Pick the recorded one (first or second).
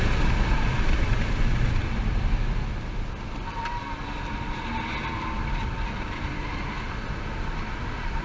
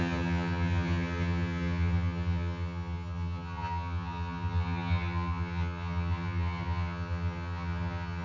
first